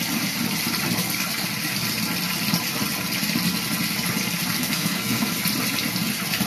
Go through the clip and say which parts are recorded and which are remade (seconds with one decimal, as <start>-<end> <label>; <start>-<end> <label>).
0.0-4.6 recorded; 4.6-5.3 remade; 5.3-6.5 recorded